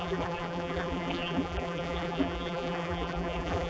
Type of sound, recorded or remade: remade